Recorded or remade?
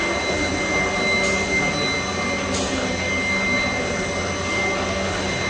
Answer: recorded